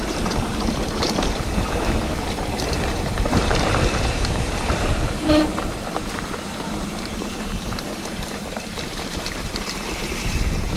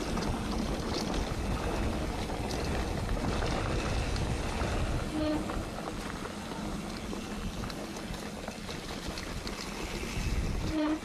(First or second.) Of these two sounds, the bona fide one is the second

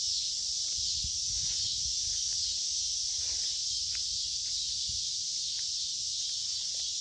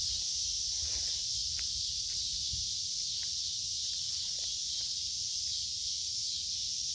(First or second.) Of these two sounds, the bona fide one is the first